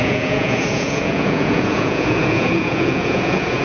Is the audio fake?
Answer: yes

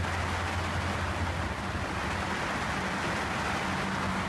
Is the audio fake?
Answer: no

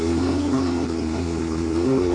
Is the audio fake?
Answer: yes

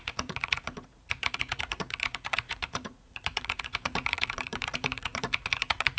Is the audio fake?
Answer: yes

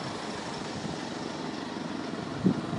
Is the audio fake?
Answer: yes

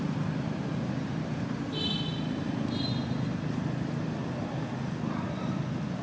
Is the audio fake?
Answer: no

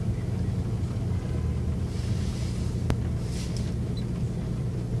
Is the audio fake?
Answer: no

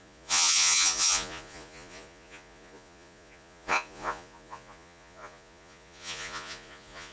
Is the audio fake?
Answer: yes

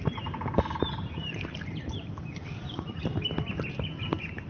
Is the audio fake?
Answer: no